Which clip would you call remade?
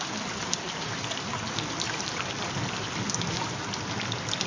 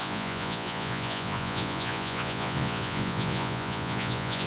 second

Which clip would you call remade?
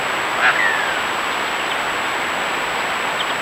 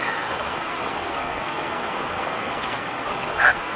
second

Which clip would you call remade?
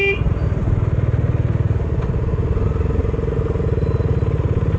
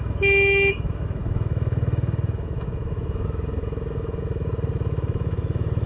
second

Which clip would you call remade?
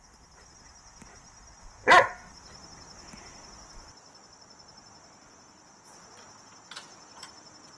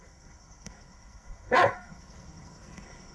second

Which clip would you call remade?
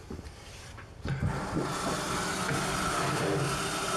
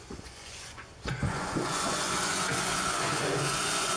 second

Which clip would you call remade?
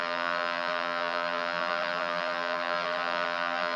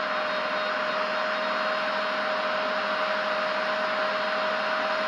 first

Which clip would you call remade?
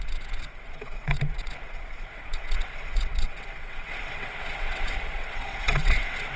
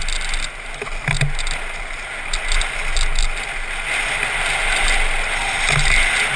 first